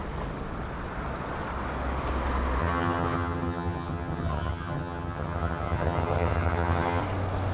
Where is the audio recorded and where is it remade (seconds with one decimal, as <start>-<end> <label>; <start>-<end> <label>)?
0.0-2.6 recorded; 2.6-7.0 remade; 7.0-7.5 recorded